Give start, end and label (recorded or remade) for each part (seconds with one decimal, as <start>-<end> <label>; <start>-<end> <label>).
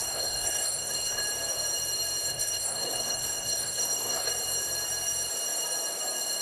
0.0-1.2 remade; 1.2-2.3 recorded; 2.3-4.3 remade; 4.3-6.4 recorded